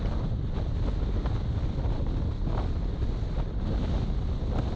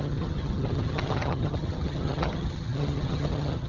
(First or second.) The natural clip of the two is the first